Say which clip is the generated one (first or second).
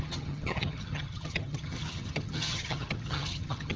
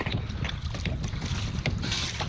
first